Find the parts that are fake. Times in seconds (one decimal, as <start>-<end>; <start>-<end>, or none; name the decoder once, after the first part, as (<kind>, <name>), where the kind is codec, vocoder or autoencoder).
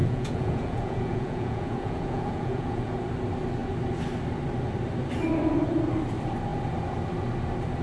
0.0-2.9 (vocoder, Vocos)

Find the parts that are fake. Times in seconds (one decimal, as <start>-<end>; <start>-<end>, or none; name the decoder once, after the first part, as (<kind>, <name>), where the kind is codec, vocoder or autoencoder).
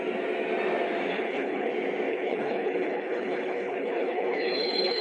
1.1-1.7 (codec, HILCodec); 2.1-5.0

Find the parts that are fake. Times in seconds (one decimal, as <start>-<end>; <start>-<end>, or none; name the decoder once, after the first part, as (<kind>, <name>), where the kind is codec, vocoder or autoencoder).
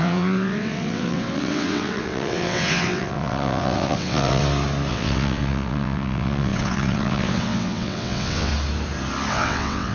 0.0-4.4 (vocoder, WaveNeXt); 4.9-8.5; 9.3-9.9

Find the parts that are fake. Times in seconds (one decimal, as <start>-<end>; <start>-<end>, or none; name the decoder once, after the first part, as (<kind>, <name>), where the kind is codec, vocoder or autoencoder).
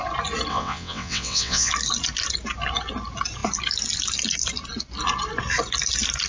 0.5-1.7 (vocoder, WaveNeXt)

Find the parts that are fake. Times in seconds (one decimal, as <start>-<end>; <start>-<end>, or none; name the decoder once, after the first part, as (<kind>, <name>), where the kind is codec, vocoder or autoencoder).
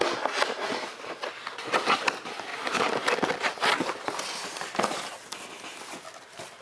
none